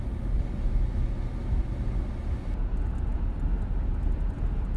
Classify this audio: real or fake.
real